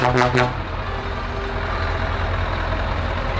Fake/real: real